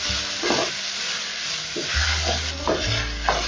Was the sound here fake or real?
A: real